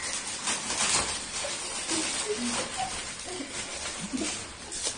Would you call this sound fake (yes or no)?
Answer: no